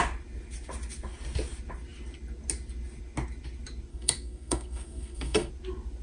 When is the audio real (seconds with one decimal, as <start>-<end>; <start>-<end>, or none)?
0.0-3.9; 5.5-6.0